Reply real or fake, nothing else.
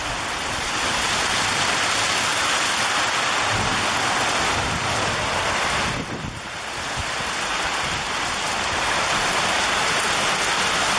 real